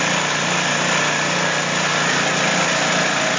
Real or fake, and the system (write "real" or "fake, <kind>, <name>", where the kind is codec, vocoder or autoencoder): real